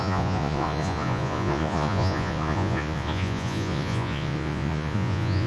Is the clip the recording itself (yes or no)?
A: no